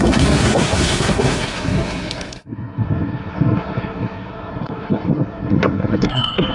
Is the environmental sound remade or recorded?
remade